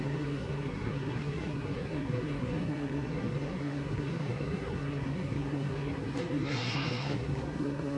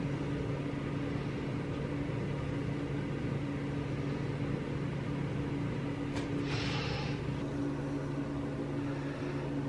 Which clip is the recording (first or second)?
second